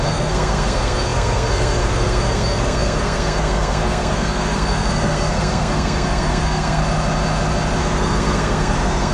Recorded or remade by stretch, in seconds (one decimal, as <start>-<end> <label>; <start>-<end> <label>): 0.0-6.8 remade; 6.8-7.8 recorded; 7.8-9.1 remade